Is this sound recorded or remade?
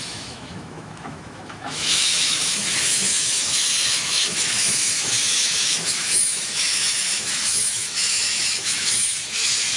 remade